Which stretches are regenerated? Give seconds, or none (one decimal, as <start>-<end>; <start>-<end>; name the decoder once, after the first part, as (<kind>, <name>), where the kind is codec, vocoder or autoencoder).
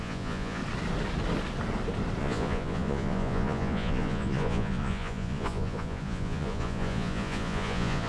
0.0-0.6 (vocoder, Vocos); 2.2-8.1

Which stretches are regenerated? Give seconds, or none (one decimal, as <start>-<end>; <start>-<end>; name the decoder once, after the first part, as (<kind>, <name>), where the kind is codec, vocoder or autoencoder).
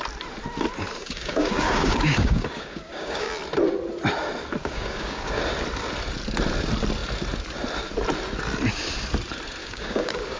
1.0-3.3 (codec, DAC); 4.6-5.4; 9.6-10.4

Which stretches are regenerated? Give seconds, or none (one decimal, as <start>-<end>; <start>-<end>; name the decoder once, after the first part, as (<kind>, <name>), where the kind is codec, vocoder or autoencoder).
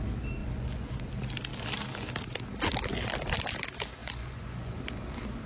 0.4-1.0 (vocoder, Vocos); 4.0-4.8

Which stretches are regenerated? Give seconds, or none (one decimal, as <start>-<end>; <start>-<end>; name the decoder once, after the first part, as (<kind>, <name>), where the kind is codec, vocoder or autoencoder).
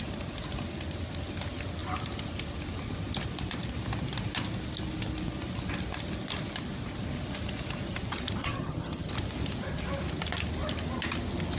8.4-9.1 (vocoder, HiFi-GAN)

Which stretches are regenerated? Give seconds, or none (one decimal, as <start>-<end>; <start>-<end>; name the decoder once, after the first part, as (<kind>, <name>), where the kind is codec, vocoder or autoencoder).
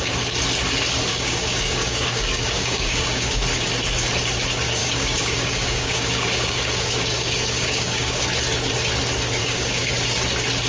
1.1-3.4 (codec, DAC); 4.8-8.2; 9.4-9.9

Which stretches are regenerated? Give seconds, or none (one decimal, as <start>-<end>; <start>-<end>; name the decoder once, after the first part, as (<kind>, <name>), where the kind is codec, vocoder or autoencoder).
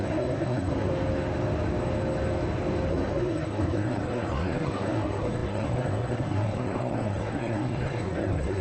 0.0-0.9 (codec, SNAC); 2.9-8.6